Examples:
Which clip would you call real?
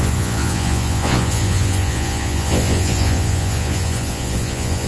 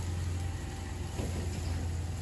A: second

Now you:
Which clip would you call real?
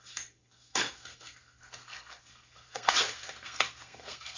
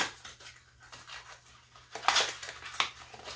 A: second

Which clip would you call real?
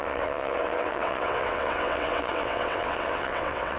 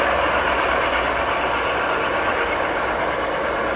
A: second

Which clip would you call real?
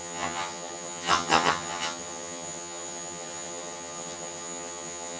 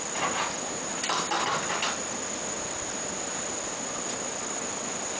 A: second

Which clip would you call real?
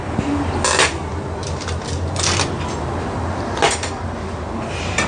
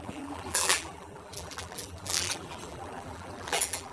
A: first